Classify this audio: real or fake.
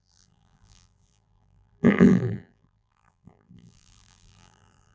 fake